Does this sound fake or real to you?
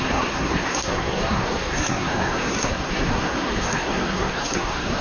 fake